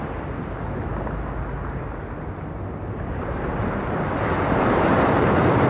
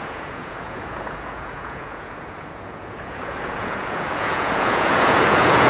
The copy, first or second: second